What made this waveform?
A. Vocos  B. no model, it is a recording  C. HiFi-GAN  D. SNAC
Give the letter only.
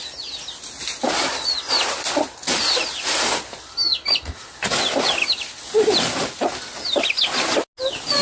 B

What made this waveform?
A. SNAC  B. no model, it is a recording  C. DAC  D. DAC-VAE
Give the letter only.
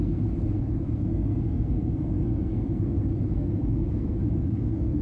A